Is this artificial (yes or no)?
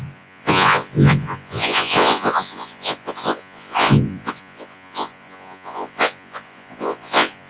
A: yes